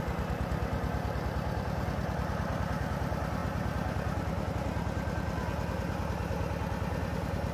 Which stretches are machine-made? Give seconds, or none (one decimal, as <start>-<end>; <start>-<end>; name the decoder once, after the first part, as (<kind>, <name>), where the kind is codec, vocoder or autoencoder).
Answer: none